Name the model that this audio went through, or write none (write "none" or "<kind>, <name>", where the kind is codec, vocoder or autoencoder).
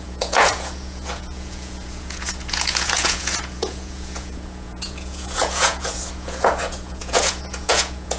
vocoder, Vocos